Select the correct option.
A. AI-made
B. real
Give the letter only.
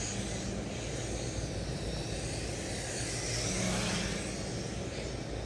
B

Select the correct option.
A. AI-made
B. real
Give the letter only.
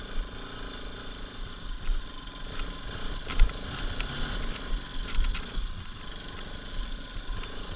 B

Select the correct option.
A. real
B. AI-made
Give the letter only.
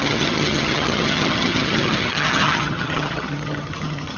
B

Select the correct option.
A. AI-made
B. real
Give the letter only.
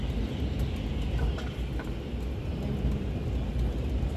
B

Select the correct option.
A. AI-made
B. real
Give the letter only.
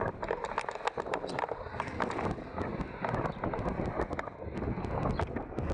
B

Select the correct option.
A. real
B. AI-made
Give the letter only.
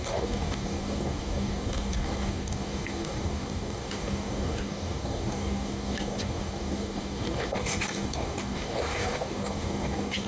B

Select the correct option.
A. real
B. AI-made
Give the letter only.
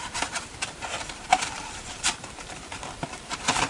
B